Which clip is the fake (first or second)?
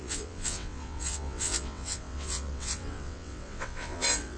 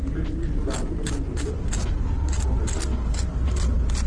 first